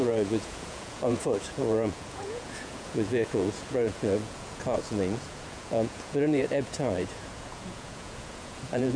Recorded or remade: remade